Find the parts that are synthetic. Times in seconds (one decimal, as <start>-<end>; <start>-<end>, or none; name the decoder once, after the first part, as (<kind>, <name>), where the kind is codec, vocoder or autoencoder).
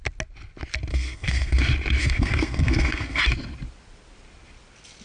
0.9-1.6 (codec, SNAC); 2.0-3.2